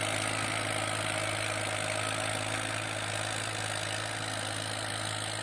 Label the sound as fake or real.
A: real